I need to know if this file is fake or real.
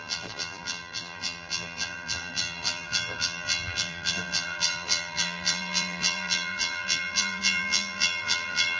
fake